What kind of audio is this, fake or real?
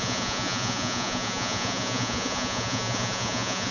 fake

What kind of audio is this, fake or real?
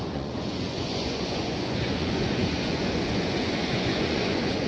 fake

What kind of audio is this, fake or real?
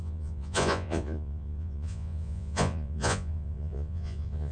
fake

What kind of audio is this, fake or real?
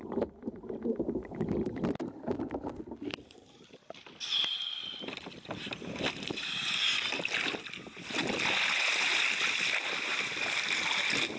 real